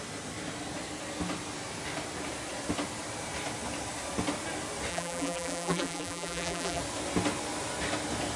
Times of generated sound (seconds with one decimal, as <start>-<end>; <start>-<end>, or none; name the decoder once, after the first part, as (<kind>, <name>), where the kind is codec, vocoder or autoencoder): 4.9-6.8 (vocoder, BigVGAN v2)